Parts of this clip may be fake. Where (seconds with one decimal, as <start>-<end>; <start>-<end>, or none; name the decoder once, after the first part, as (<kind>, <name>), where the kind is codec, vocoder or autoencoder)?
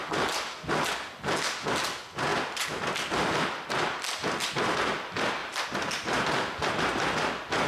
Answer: 5.4-6.7 (vocoder, BigVGAN v2)